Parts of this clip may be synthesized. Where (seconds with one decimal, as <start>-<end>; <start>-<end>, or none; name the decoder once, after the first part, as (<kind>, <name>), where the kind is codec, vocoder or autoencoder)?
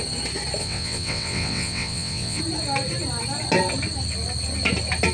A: 0.6-2.4 (vocoder, WaveNeXt)